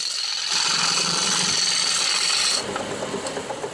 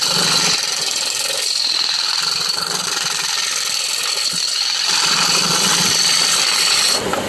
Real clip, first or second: first